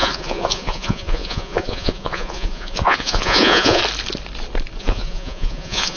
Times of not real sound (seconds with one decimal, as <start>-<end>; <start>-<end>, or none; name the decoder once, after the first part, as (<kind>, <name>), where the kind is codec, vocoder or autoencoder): 0.0-3.8 (vocoder, Vocos); 4.8-6.0